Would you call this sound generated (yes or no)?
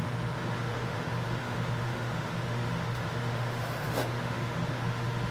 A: yes